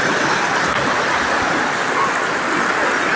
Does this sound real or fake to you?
real